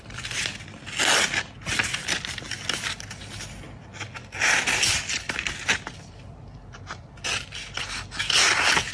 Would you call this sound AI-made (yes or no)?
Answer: no